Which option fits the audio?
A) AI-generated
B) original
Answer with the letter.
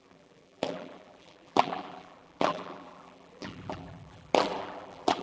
A